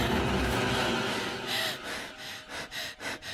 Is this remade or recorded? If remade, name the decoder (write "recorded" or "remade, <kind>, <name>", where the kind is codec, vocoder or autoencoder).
recorded